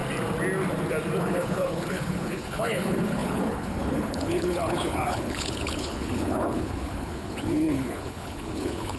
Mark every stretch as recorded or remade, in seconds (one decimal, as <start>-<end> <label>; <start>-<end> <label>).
0.0-1.2 recorded; 1.2-9.0 remade

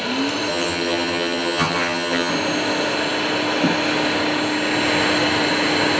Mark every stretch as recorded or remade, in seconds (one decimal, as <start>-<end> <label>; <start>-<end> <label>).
0.0-0.5 recorded; 0.5-2.3 remade; 2.3-6.0 recorded

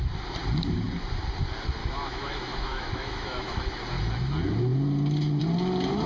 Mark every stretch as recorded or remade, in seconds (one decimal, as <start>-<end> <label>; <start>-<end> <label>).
0.0-1.8 recorded; 1.8-3.6 remade; 3.6-6.1 recorded

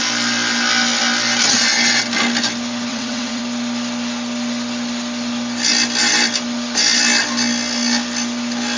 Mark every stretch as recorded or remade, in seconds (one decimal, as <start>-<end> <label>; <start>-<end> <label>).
0.0-2.9 recorded; 2.9-3.4 remade; 3.4-8.8 recorded

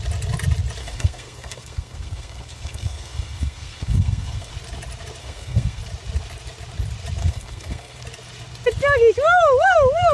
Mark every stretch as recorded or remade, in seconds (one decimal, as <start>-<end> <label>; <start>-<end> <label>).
0.0-0.8 recorded; 0.8-4.5 remade; 4.5-5.2 recorded; 5.2-5.8 remade; 5.8-7.2 recorded; 7.2-8.0 remade; 8.0-10.1 recorded